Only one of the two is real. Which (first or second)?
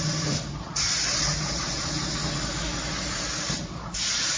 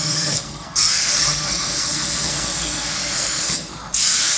first